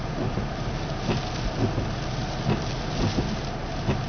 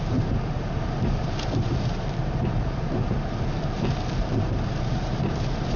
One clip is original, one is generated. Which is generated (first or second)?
second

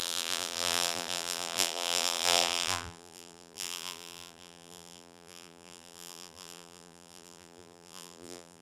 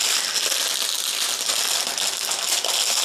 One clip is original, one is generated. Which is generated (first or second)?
first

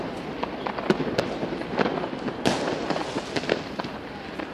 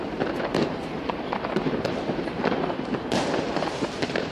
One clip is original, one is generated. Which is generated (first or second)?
second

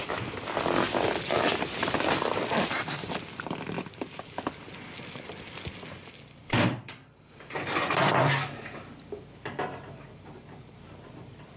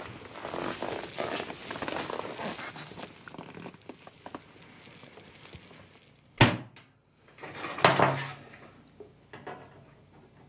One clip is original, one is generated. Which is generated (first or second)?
first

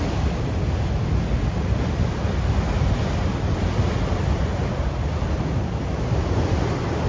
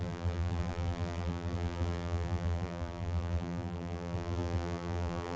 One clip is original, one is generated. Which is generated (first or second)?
second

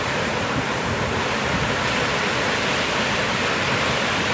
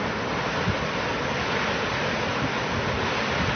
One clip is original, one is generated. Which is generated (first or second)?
first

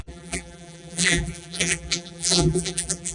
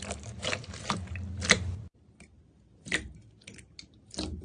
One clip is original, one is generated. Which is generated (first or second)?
first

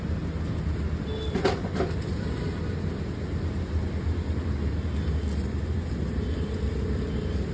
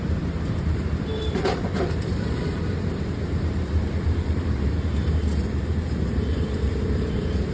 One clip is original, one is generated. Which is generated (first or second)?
second